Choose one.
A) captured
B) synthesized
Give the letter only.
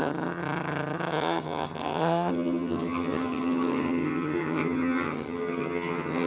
B